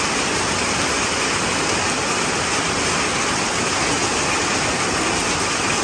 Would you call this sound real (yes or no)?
yes